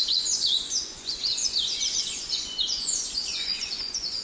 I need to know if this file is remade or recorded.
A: remade